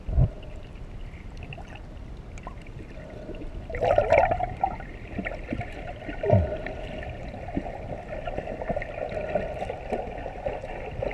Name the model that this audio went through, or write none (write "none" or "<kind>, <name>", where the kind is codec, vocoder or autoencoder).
none